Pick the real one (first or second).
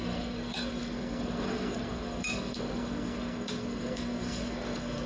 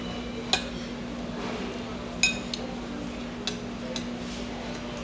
second